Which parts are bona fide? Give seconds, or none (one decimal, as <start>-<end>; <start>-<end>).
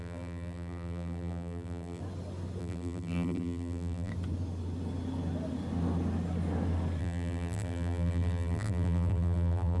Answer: 2.0-2.6; 4.1-7.0